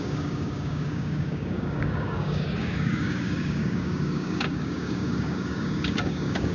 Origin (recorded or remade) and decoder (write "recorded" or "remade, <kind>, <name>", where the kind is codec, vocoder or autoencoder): remade, codec, DAC